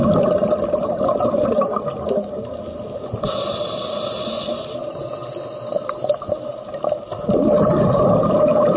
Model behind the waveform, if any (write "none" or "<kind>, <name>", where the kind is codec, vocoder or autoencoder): none